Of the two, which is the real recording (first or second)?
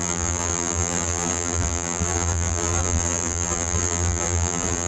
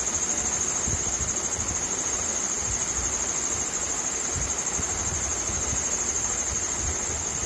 second